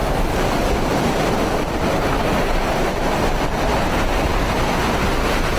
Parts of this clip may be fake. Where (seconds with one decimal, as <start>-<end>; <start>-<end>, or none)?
0.0-4.3; 4.8-5.6